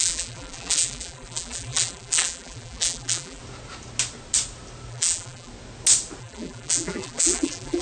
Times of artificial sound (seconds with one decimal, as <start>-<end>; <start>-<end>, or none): 0.0-3.4; 4.9-5.5; 6.2-7.8